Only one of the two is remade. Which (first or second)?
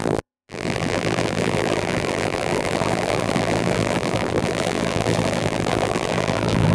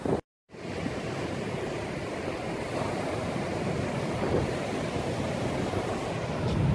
first